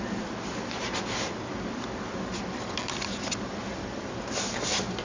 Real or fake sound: real